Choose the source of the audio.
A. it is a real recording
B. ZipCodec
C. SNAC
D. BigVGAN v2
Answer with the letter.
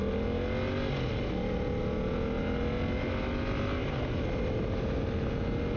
A